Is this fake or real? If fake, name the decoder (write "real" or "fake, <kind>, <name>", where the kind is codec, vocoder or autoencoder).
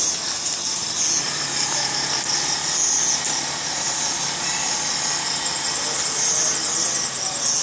real